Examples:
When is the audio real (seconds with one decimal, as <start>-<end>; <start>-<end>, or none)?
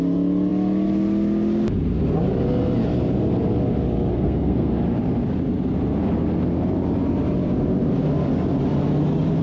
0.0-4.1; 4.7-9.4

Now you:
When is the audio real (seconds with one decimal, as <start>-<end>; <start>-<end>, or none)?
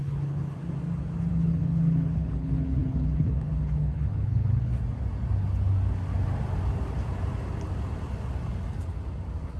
0.6-1.3; 4.7-9.6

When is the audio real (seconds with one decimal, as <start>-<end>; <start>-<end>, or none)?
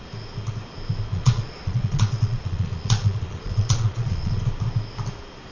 0.0-1.1; 4.4-5.5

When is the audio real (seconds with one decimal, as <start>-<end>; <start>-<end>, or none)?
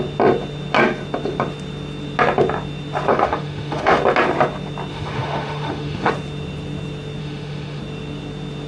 0.0-3.1; 4.0-4.9; 6.1-7.2; 7.8-8.7